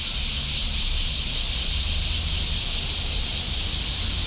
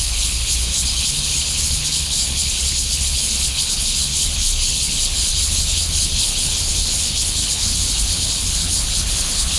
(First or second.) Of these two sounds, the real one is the first